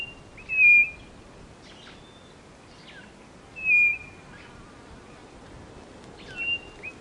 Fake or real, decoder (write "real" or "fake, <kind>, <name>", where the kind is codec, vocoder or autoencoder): real